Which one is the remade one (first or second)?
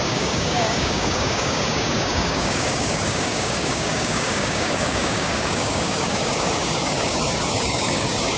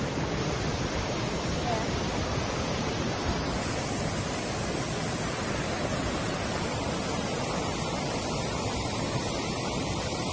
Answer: first